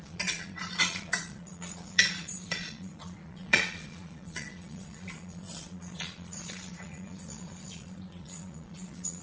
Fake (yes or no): yes